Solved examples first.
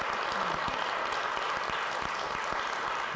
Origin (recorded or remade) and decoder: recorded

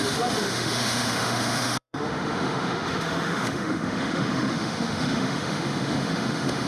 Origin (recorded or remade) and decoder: remade, autoencoder, DAC-VAE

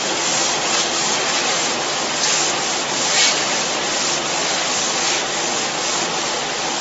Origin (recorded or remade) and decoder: recorded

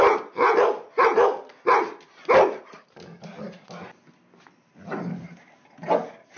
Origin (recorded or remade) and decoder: recorded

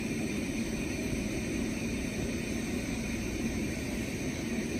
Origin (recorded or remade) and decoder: remade, vocoder, BigVGAN v2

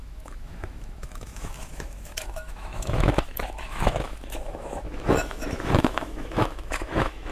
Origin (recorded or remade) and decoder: remade, autoencoder, DAC-VAE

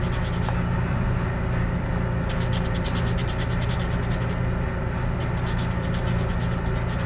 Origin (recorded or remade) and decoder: recorded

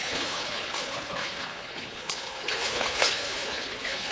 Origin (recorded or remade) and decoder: remade, codec, HILCodec